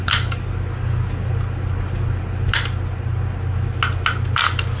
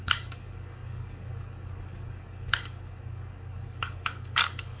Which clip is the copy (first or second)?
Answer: second